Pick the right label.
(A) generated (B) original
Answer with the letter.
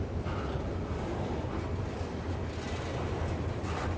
B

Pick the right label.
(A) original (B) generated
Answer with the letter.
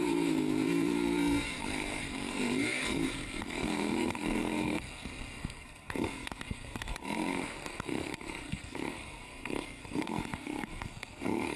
B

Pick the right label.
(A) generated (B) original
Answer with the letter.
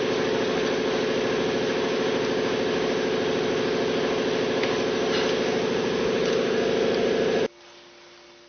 B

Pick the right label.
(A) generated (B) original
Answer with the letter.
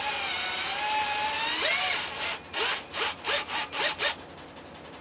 B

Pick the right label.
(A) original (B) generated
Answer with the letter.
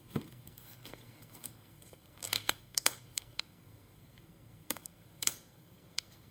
B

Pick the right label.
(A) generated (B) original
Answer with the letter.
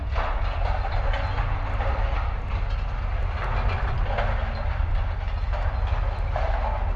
B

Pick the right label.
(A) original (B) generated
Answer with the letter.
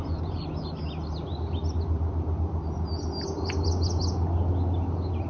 A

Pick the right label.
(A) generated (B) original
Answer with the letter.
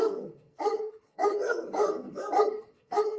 A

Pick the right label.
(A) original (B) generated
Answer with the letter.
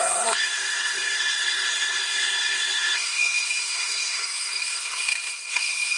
B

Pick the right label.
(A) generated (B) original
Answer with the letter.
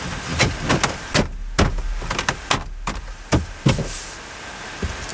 B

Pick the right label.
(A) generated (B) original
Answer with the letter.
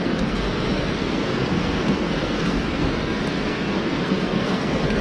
A